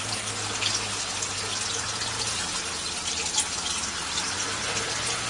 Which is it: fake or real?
real